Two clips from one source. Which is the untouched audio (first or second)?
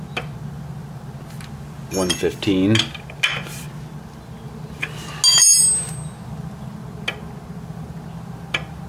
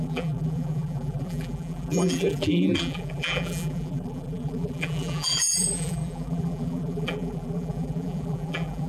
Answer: first